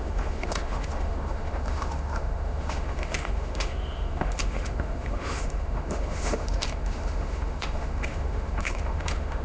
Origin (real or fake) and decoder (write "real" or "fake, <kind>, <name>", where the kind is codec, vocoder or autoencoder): fake, autoencoder, DAC-VAE